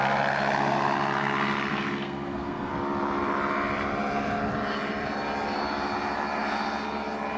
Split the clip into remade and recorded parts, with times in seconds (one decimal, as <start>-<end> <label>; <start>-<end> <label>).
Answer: 0.0-1.7 recorded; 1.7-2.7 remade; 2.7-7.4 recorded